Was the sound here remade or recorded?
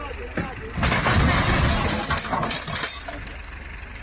recorded